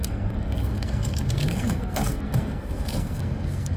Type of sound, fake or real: fake